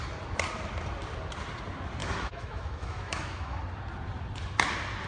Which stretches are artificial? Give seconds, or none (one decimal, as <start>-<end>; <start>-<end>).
2.0-3.6

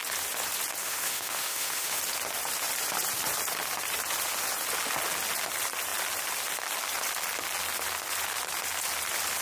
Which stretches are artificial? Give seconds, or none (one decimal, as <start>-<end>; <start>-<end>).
0.8-2.0

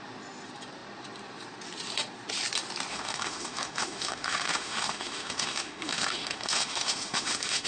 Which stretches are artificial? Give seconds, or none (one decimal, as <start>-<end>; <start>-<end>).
2.9-7.7

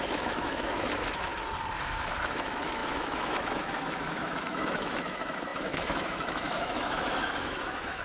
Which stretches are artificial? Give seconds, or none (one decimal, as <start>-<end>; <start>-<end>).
0.0-1.3; 1.8-8.0

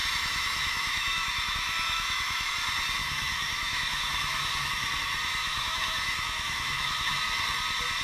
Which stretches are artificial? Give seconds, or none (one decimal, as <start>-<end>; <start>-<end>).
0.0-2.5; 3.0-4.7; 5.4-7.2

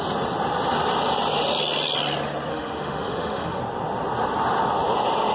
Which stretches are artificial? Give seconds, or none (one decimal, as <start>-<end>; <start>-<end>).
2.5-3.6

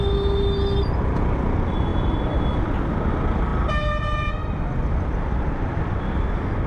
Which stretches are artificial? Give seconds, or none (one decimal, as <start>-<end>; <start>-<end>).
none